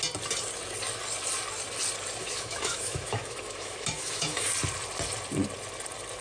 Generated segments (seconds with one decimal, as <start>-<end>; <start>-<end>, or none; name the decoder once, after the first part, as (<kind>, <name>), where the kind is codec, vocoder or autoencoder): 2.2-4.5 (autoencoder, DAC-VAE)